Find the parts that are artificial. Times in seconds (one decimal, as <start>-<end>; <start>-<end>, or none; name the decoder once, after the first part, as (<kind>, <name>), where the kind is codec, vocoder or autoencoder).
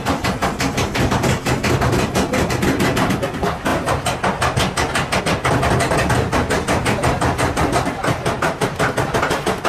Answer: none